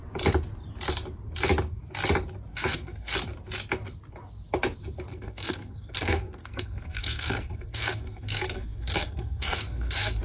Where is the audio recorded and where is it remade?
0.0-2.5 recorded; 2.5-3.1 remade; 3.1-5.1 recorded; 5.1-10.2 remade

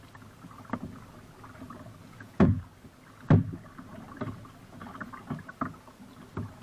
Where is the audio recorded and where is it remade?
0.0-2.0 recorded; 2.0-2.6 remade; 2.6-6.6 recorded

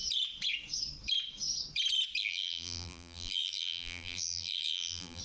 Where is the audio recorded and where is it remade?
0.0-2.2 recorded; 2.2-5.2 remade

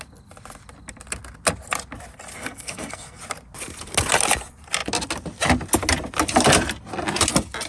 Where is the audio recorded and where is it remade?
0.0-2.4 recorded; 2.4-3.2 remade; 3.2-7.7 recorded